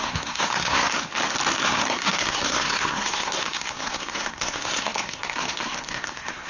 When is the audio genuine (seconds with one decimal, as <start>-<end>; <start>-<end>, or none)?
1.1-1.6